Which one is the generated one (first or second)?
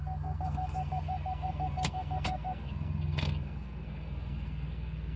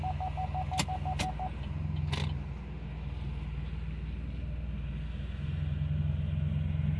first